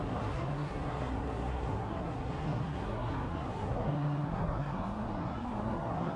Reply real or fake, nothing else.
fake